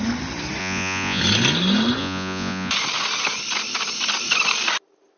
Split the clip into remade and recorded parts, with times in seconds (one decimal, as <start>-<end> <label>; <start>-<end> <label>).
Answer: 0.0-0.6 recorded; 0.6-1.2 remade; 1.2-2.0 recorded; 2.0-2.7 remade; 2.7-5.2 recorded